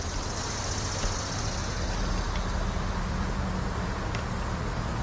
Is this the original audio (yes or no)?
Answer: yes